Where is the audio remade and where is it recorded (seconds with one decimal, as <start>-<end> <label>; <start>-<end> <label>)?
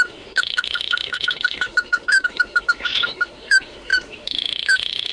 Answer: 0.0-5.1 remade